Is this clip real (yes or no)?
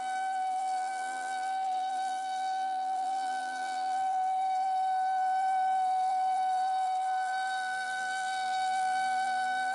no